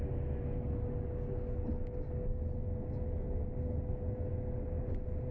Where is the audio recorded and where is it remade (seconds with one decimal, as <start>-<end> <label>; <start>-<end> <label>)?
0.0-5.3 recorded